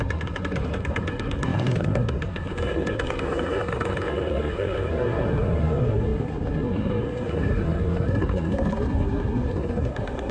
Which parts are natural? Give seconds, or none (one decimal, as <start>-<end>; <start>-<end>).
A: none